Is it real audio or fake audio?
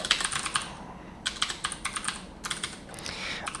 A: real